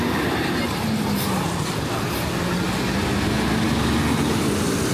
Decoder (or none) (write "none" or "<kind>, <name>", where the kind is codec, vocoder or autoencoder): none